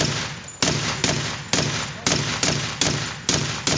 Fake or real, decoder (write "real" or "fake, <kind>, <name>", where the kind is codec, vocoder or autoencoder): real